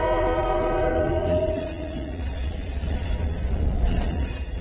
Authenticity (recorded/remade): remade